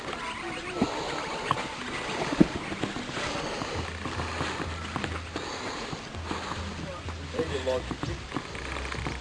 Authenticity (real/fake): real